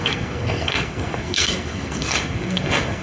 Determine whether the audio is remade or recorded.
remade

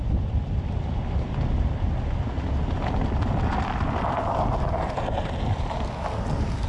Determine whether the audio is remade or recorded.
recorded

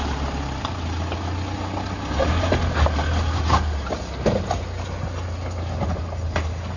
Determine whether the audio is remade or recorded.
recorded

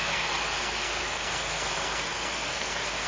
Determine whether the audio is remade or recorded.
remade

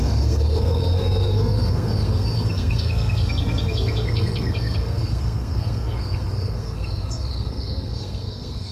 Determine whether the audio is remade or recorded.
remade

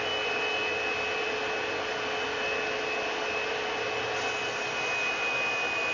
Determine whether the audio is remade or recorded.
recorded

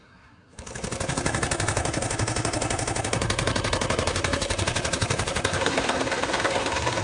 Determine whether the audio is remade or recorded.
remade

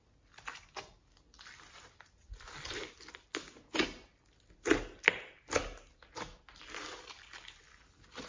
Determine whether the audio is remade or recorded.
recorded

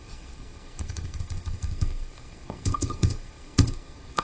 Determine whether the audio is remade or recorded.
remade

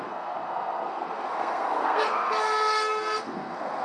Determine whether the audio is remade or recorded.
remade